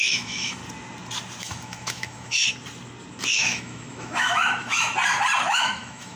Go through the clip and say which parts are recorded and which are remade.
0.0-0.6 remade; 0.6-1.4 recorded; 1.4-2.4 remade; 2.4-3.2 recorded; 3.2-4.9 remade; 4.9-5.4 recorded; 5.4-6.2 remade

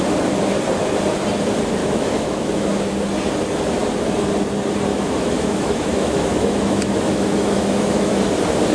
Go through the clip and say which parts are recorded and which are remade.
0.0-1.8 recorded; 1.8-2.9 remade; 2.9-4.9 recorded; 4.9-8.2 remade; 8.2-8.7 recorded

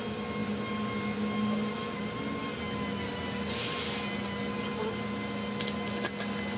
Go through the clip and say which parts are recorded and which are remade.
0.0-6.6 recorded

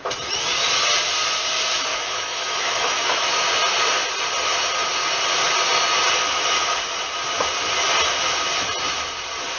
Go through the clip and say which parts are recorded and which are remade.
0.0-1.9 recorded; 1.9-3.3 remade; 3.3-9.6 recorded

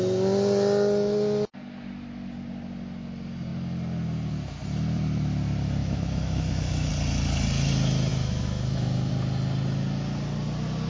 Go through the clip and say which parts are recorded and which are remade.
0.0-5.8 recorded; 5.8-6.9 remade; 6.9-8.1 recorded; 8.1-9.1 remade; 9.1-10.9 recorded